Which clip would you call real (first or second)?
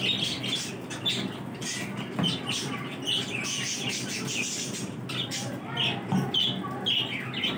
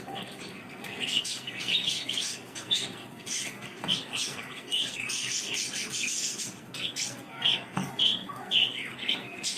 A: first